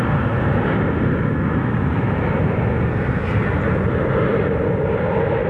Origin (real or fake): real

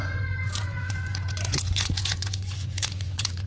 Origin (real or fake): fake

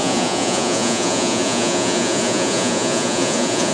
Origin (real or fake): fake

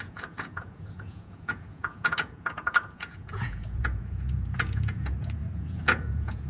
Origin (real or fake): fake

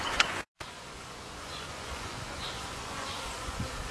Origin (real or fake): fake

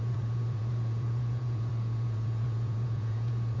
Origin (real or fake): fake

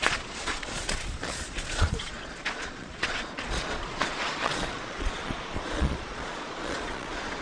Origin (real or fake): fake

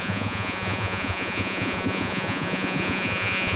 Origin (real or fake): fake